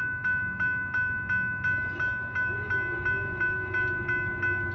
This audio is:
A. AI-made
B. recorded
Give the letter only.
B